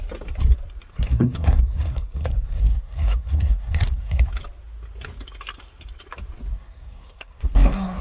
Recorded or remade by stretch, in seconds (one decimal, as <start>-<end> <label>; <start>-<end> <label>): 0.0-0.9 recorded; 0.9-4.3 remade; 4.3-6.5 recorded; 6.5-8.0 remade